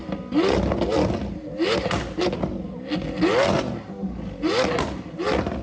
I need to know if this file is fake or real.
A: real